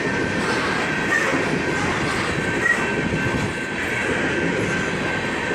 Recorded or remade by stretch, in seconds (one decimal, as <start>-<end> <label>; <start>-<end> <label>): 0.0-5.5 recorded